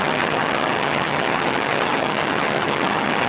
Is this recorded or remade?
remade